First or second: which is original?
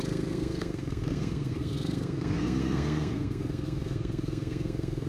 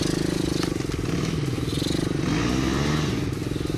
second